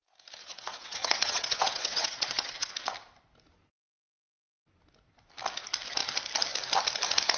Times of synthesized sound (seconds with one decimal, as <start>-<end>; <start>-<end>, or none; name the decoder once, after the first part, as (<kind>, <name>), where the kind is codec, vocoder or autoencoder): 0.4-2.7 (vocoder, WaveNeXt)